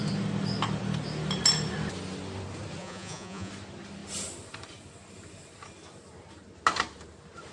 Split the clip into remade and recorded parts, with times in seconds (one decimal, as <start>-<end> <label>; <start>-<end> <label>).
0.0-2.8 recorded; 2.8-3.5 remade; 3.5-7.5 recorded